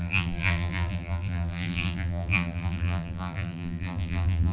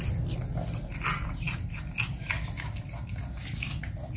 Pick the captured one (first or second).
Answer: second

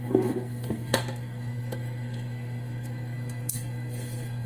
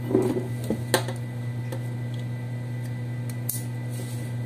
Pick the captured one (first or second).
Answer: second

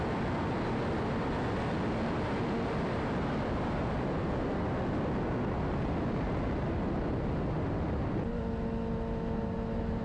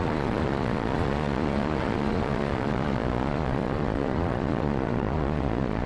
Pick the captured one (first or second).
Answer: first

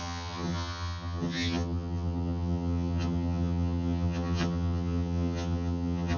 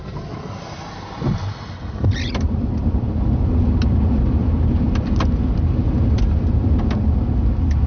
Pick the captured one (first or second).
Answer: second